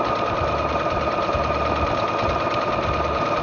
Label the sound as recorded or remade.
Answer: recorded